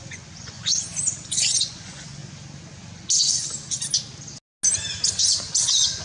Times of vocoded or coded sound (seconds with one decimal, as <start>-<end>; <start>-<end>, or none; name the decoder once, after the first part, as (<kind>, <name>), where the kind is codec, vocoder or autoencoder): 0.0-2.2 (vocoder, Vocos); 5.0-6.0